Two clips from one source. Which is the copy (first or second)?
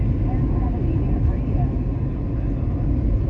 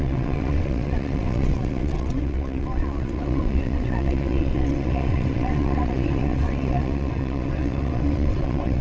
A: second